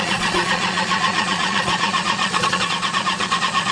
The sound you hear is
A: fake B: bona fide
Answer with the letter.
A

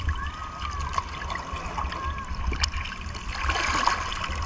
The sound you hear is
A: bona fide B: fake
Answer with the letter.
A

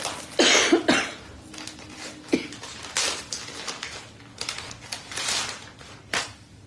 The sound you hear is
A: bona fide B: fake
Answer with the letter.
A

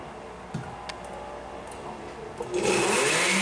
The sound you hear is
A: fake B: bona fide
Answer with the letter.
B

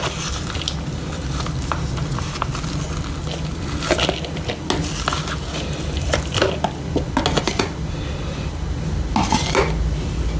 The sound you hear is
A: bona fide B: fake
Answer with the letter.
A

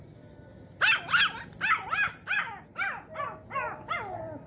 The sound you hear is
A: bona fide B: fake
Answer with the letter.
A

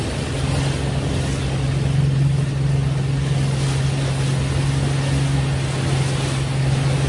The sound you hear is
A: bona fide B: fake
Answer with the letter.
A